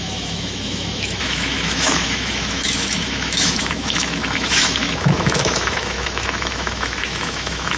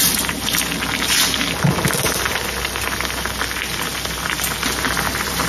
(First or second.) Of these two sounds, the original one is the second